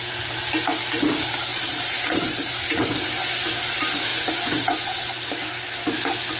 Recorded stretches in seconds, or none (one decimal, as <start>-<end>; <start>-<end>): 0.0-1.5; 2.8-6.4